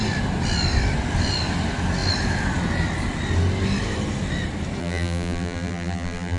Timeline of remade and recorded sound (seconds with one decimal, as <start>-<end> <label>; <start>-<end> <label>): 0.0-4.8 recorded; 4.8-6.4 remade